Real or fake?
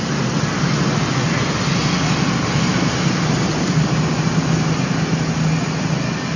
real